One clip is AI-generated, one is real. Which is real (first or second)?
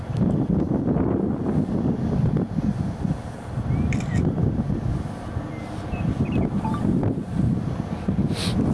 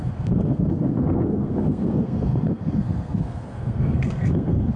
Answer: first